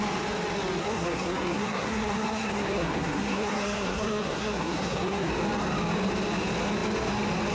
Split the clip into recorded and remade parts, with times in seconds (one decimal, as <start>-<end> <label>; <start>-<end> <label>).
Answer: 0.0-0.8 recorded; 0.8-5.3 remade; 5.3-7.5 recorded